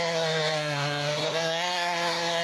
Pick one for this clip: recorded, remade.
remade